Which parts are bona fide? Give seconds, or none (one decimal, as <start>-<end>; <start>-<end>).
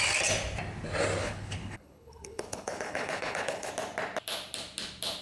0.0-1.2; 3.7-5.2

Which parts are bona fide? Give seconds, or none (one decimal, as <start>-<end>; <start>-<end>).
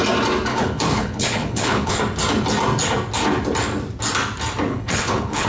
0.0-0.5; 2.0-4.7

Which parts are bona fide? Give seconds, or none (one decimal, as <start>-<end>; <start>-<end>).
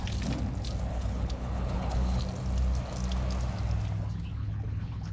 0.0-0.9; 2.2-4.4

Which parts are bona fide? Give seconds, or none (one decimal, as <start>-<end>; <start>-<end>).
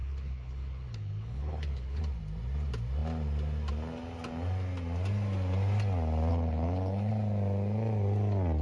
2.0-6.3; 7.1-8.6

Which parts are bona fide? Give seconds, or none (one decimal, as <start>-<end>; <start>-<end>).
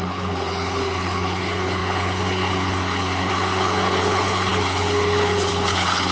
none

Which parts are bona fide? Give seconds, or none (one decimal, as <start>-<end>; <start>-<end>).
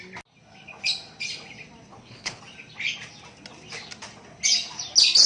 0.0-1.9; 2.4-5.3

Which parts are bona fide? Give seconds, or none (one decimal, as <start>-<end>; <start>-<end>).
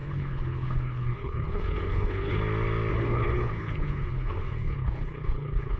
2.4-2.9